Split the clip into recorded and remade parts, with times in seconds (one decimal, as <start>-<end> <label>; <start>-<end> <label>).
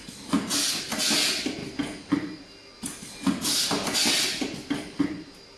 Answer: 0.0-5.6 recorded